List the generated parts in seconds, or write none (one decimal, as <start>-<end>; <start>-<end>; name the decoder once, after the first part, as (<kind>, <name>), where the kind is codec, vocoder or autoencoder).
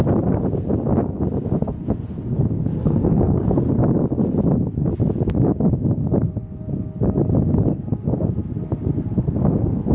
2.8-3.7 (codec, SNAC)